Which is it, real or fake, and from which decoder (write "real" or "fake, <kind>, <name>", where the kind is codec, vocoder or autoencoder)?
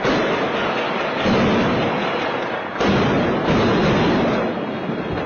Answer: real